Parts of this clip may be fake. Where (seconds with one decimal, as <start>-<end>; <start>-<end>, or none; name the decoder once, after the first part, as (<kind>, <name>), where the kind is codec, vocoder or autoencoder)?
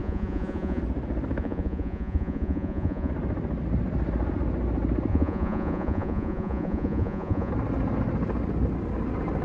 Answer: 0.0-0.8 (vocoder, Vocos); 1.4-3.1; 5.1-7.5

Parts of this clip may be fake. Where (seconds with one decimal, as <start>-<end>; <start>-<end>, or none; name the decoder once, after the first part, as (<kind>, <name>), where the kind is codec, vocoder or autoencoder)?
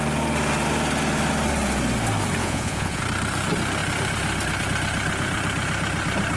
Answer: 2.4-3.0 (vocoder, Vocos)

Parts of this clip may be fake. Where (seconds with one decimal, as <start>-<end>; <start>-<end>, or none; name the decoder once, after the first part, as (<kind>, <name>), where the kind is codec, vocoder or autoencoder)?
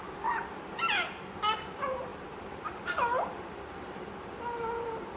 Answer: none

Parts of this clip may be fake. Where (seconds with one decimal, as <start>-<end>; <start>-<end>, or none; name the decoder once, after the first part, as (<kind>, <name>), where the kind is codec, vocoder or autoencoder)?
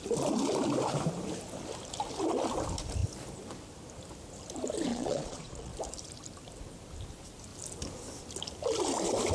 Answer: 4.9-5.7 (vocoder, Vocos)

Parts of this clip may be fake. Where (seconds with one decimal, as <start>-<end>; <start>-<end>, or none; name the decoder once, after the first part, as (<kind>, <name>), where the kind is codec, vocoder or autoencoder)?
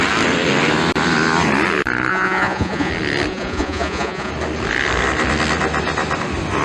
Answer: 2.1-2.9 (vocoder, Vocos); 3.3-4.3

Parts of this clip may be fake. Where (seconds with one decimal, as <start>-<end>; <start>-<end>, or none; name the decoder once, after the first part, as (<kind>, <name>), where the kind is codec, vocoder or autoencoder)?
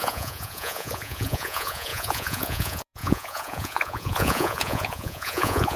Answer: 0.0-5.8 (vocoder, Vocos)